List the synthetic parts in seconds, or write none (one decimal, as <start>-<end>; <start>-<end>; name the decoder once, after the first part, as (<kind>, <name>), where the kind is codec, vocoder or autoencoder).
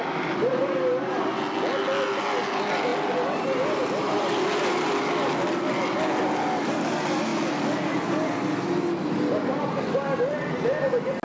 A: none